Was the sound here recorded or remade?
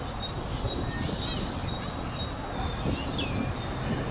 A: recorded